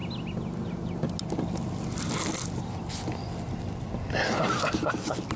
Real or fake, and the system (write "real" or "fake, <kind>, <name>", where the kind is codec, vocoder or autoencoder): real